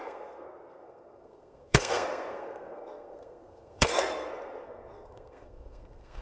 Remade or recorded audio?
remade